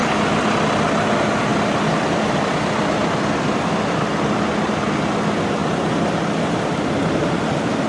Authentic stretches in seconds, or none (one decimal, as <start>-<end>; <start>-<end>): 0.0-1.5; 3.7-7.9